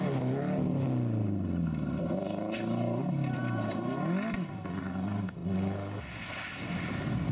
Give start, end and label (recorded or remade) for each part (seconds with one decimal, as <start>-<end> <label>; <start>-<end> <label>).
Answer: 0.0-7.3 recorded